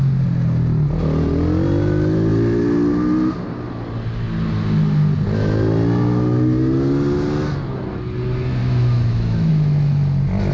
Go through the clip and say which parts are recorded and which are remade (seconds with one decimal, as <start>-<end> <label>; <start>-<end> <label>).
0.0-8.6 recorded; 8.6-9.5 remade; 9.5-10.5 recorded